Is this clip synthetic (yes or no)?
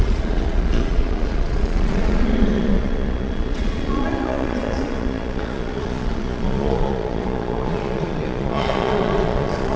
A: yes